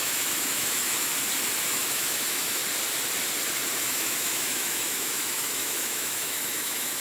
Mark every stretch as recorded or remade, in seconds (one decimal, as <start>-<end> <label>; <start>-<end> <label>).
0.0-1.1 remade; 1.1-1.6 recorded; 1.6-2.6 remade; 2.6-3.8 recorded; 3.8-7.0 remade